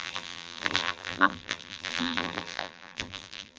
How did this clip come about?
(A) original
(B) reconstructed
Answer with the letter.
B